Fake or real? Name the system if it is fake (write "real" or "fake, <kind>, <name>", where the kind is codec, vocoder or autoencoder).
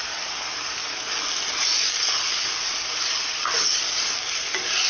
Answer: real